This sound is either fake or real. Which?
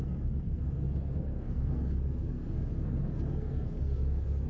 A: fake